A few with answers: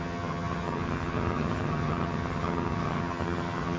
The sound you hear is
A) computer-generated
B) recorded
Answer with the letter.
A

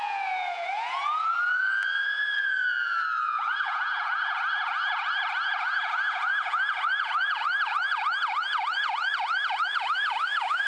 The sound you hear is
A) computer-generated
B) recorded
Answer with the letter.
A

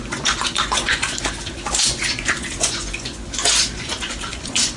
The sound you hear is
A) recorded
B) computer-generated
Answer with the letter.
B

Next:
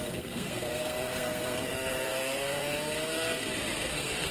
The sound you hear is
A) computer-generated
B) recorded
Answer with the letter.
A